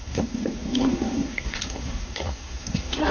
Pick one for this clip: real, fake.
fake